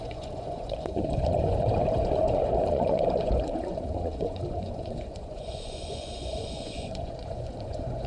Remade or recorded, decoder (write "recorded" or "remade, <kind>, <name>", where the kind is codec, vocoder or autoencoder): remade, vocoder, Vocos